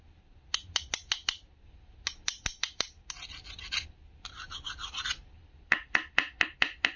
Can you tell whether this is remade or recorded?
recorded